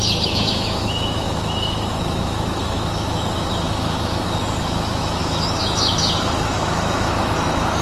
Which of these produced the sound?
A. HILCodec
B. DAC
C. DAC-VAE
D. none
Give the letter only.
C